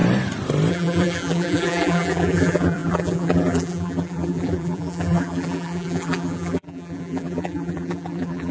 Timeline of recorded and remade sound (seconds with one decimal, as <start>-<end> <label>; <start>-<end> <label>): 0.0-0.7 recorded; 0.7-8.5 remade